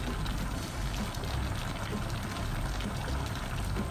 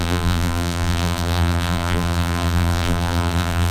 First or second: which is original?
first